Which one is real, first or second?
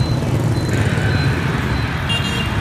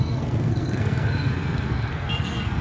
first